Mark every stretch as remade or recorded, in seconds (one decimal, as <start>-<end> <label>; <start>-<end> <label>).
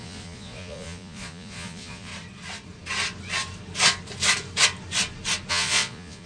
0.0-2.1 remade; 2.1-5.5 recorded; 5.5-6.3 remade